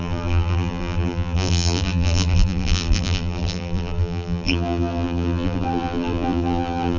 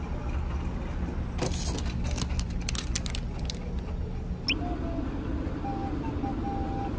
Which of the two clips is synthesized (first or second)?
first